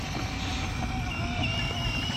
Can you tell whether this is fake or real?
real